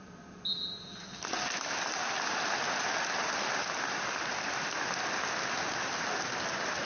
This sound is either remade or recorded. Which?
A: recorded